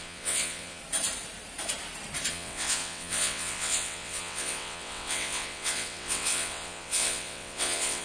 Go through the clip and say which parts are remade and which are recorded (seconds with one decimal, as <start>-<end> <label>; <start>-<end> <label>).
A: 0.0-0.8 remade; 0.8-2.3 recorded; 2.3-8.0 remade